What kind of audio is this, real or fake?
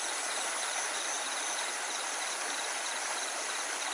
real